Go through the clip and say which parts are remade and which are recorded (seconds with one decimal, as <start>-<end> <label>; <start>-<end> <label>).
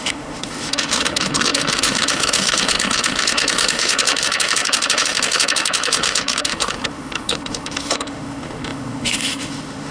0.0-9.9 remade